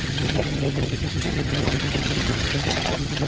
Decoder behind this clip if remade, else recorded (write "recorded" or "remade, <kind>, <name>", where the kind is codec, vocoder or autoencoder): remade, vocoder, HiFi-GAN